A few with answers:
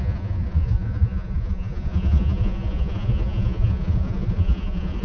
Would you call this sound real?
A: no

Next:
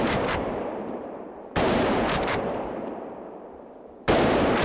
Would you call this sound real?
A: no